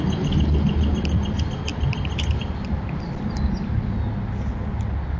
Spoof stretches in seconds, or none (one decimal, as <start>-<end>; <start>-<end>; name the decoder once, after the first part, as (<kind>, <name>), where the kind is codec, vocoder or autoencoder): none